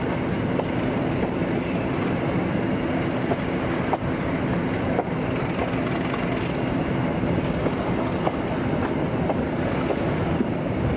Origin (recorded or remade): recorded